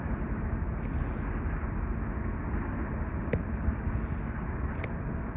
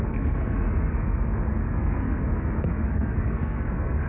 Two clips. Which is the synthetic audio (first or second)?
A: second